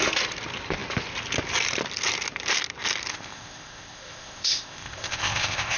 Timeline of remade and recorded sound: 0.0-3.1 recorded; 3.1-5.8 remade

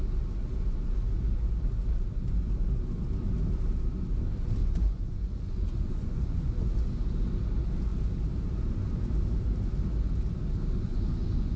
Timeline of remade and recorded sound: 0.0-4.6 recorded; 4.6-6.7 remade; 6.7-10.9 recorded; 10.9-11.6 remade